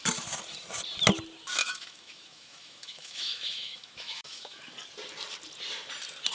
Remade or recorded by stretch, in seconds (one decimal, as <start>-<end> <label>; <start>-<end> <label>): 0.0-1.6 recorded; 1.6-4.6 remade; 4.6-6.3 recorded